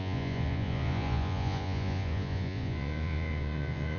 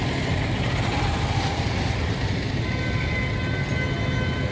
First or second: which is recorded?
second